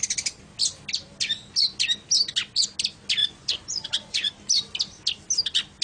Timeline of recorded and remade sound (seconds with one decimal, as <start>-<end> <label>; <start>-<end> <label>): 0.0-3.2 recorded; 3.2-4.3 remade; 4.3-5.8 recorded